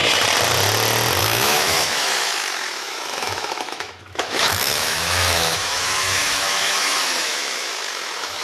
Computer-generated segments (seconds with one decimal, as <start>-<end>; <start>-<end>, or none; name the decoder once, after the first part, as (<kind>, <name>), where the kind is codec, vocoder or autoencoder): 1.2-8.4 (autoencoder, DAC-VAE)